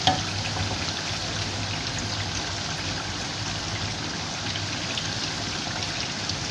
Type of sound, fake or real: real